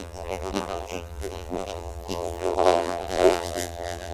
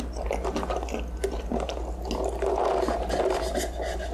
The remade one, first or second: first